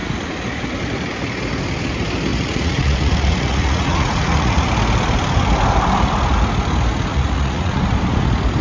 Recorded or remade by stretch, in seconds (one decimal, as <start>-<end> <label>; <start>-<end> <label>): 0.0-2.3 recorded; 2.3-4.7 remade; 4.7-7.1 recorded; 7.1-7.8 remade; 7.8-8.6 recorded